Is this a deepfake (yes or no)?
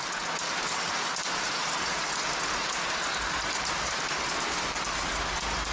no